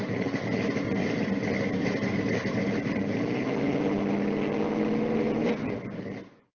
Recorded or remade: recorded